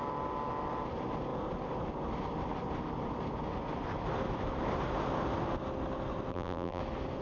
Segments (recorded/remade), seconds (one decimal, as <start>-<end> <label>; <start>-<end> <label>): 0.0-6.3 recorded; 6.3-6.8 remade; 6.8-7.2 recorded